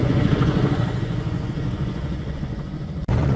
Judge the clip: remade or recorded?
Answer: remade